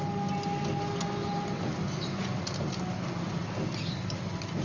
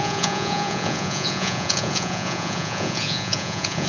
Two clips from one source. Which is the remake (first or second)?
second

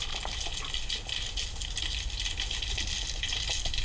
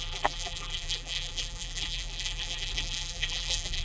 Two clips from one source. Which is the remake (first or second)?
second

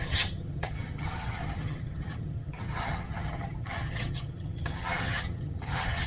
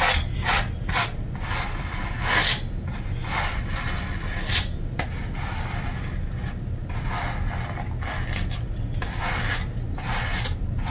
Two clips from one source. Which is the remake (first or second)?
first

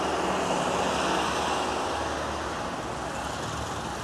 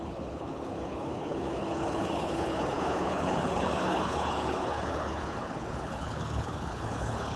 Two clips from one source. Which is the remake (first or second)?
second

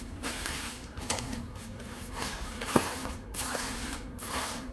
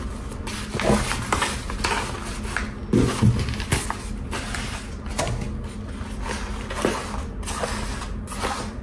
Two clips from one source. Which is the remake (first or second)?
first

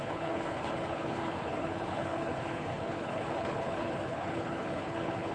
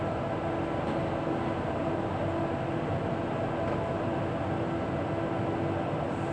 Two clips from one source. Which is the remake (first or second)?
first